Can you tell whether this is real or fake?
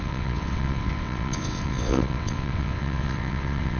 fake